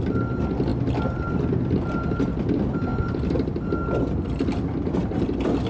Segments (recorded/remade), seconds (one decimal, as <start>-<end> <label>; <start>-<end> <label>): 0.0-5.7 recorded